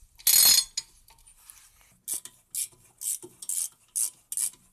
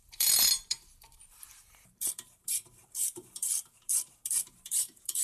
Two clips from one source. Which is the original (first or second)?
first